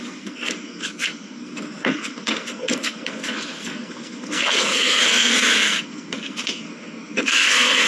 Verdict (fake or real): fake